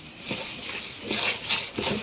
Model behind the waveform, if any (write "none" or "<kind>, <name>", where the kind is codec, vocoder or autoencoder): none